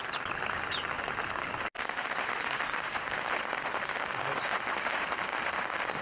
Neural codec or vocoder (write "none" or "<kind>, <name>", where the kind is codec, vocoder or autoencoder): none